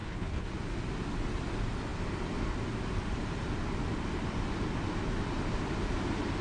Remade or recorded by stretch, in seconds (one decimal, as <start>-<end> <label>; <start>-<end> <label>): 0.0-0.5 remade; 0.5-6.4 recorded